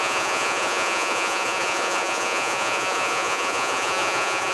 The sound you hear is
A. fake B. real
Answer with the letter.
A